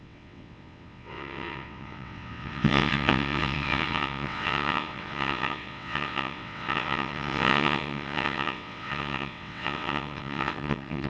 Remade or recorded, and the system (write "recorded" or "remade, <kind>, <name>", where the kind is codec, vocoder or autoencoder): remade, vocoder, WaveNeXt